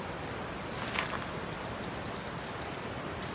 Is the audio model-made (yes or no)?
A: no